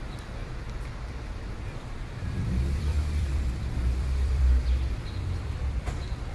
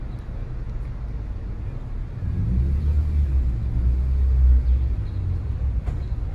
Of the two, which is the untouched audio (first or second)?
second